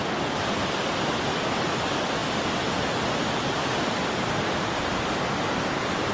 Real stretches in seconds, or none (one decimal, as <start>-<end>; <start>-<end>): 0.0-6.1